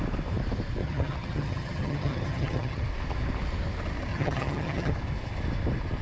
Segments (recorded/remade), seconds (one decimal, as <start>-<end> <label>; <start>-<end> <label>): 0.0-0.8 recorded; 0.8-2.8 remade; 2.8-4.1 recorded; 4.1-4.9 remade; 4.9-6.0 recorded